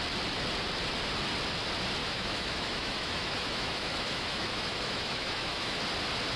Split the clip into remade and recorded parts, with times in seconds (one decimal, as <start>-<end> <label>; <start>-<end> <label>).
0.0-2.0 recorded; 2.0-5.8 remade; 5.8-6.4 recorded